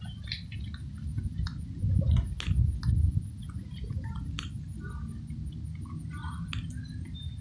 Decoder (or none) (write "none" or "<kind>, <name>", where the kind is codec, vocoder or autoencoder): none